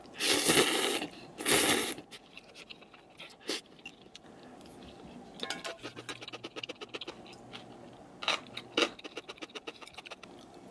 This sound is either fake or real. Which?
real